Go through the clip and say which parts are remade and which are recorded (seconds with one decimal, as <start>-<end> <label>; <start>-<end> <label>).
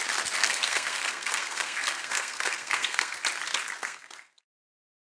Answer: 0.0-0.4 recorded; 0.4-3.2 remade; 3.2-3.8 recorded; 3.8-4.4 remade; 4.4-5.0 recorded